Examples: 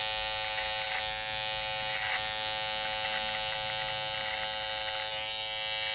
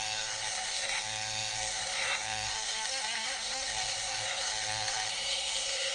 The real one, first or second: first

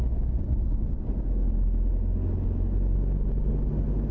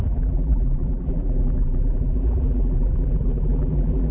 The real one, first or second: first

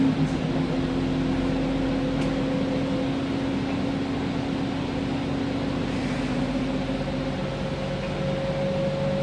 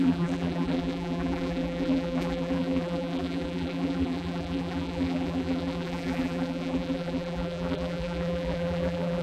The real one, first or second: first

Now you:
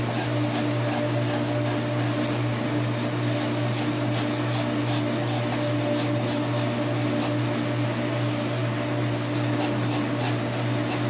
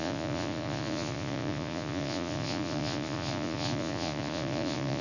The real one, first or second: first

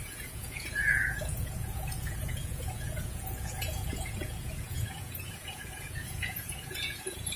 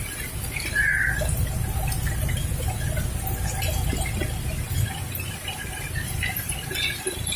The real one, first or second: second